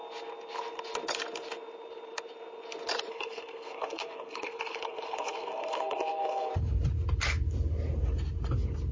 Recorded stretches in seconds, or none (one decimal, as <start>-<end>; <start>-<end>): 0.0-3.1; 6.5-8.9